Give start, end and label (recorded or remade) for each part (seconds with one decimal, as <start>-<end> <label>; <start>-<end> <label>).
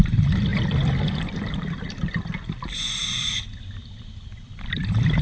0.0-0.5 remade; 0.5-3.6 recorded; 3.6-5.2 remade